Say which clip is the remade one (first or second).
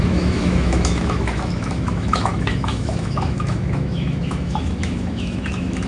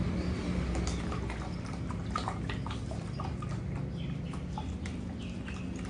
first